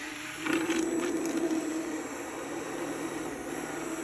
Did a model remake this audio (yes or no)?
yes